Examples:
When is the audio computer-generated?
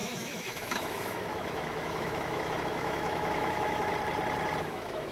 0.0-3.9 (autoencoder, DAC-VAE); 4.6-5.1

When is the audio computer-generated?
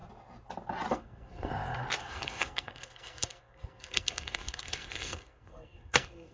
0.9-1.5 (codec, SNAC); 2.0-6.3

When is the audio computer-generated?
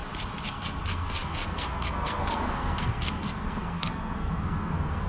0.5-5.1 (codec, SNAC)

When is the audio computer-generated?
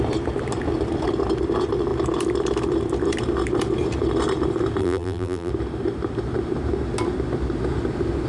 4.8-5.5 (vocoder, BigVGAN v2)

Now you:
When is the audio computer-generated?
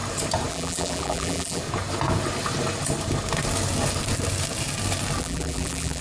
0.5-1.6 (vocoder, BigVGAN v2); 5.2-6.0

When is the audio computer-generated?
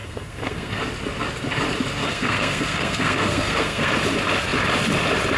0.0-0.8 (codec, SNAC); 2.0-3.9